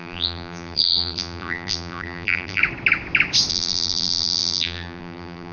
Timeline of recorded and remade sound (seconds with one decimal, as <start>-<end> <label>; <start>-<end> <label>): 0.0-2.6 remade; 2.6-3.5 recorded; 3.5-5.5 remade